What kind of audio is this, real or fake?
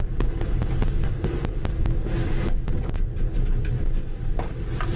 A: real